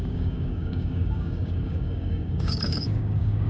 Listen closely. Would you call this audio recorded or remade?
remade